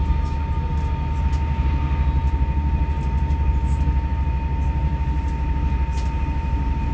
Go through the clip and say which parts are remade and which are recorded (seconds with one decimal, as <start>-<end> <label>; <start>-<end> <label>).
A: 0.0-6.9 recorded